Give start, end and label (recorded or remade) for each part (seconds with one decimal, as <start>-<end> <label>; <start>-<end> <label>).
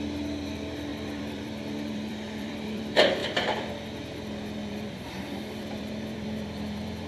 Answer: 0.0-0.9 recorded; 0.9-2.8 remade; 2.8-3.2 recorded; 3.2-3.7 remade; 3.7-4.7 recorded; 4.7-7.1 remade